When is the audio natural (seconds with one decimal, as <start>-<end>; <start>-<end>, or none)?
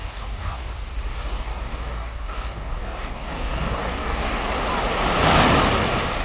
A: 0.6-1.1; 4.4-6.2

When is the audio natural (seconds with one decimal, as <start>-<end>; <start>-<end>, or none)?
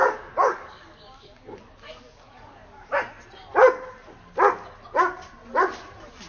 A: 2.9-6.3